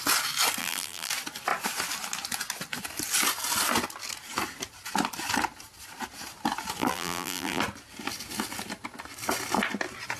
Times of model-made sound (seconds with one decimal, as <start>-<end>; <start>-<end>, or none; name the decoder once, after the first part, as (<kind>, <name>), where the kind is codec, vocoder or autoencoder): 0.6-1.1 (vocoder, BigVGAN v2); 6.8-7.6

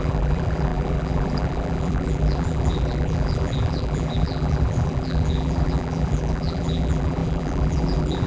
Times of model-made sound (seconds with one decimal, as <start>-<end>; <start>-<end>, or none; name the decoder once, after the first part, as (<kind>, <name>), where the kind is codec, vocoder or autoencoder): 0.0-8.3 (vocoder, BigVGAN v2)

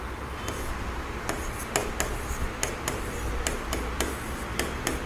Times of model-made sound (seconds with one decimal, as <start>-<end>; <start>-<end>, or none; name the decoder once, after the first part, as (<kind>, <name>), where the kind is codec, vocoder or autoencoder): none

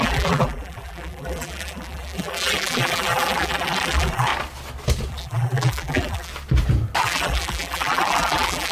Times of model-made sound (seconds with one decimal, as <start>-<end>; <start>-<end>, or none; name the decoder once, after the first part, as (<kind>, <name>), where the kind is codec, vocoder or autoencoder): 0.0-4.3 (vocoder, BigVGAN v2); 5.1-6.3; 7.0-8.7

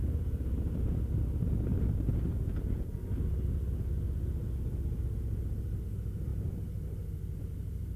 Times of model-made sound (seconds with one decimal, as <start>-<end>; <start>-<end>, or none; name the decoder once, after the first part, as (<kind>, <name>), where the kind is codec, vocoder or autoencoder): 1.7-5.8 (vocoder, BigVGAN v2); 6.3-7.4

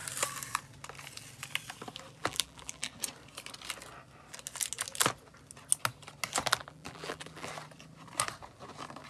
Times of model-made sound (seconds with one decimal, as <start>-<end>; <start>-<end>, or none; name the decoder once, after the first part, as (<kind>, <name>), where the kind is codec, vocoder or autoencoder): 2.2-2.9 (vocoder, BigVGAN v2); 6.6-7.5

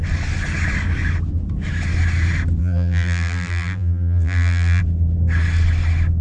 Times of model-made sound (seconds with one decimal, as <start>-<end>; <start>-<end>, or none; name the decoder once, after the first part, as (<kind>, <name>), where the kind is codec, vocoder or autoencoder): 2.6-4.8 (vocoder, BigVGAN v2)

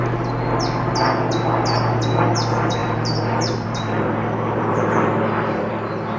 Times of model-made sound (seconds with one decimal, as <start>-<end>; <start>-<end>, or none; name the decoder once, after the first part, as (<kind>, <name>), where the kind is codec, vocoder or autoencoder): 2.8-5.7 (vocoder, BigVGAN v2)